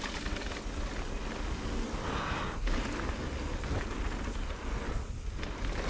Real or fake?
real